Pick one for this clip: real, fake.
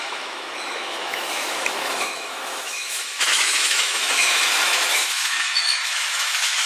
fake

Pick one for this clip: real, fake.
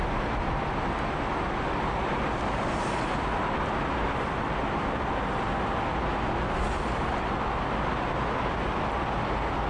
real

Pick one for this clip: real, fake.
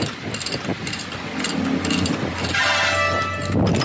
real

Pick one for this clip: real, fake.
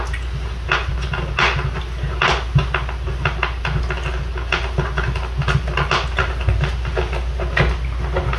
real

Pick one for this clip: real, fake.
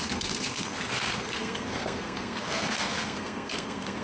fake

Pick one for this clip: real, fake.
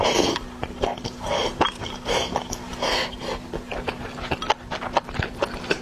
real